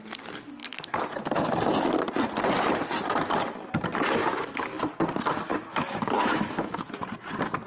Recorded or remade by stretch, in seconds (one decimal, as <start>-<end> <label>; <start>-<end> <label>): 0.0-0.6 recorded; 0.6-1.5 remade; 1.5-4.2 recorded; 4.2-5.0 remade; 5.0-5.5 recorded; 5.5-7.0 remade; 7.0-7.7 recorded